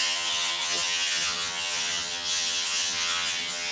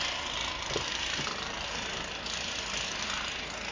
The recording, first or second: second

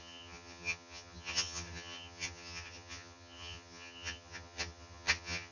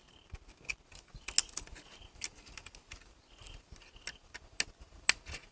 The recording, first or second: second